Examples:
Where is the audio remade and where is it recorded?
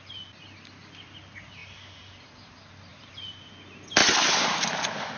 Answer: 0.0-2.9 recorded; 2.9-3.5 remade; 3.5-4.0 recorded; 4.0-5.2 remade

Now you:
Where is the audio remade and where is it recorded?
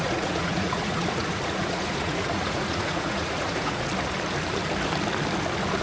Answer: 0.0-3.9 remade; 3.9-5.8 recorded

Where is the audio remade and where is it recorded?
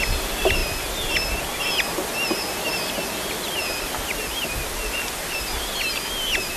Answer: 0.0-6.6 recorded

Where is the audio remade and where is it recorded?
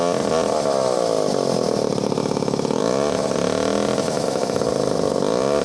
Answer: 0.0-2.2 recorded; 2.2-2.8 remade; 2.8-4.0 recorded; 4.0-4.6 remade; 4.6-5.6 recorded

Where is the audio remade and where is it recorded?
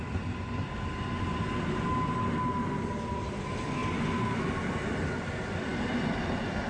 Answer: 0.0-6.7 recorded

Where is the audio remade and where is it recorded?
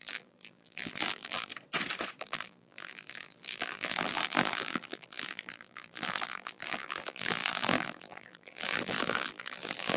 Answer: 0.0-1.5 remade; 1.5-2.2 recorded; 2.2-10.0 remade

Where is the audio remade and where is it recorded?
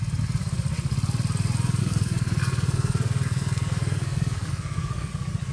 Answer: 0.0-1.8 recorded; 1.8-5.1 remade; 5.1-5.5 recorded